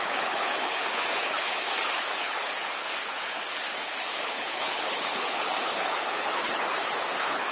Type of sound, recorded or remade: remade